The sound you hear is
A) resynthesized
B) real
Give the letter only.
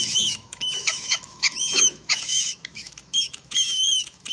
A